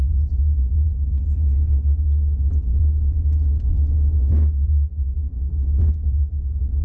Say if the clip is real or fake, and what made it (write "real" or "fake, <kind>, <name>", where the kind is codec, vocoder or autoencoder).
real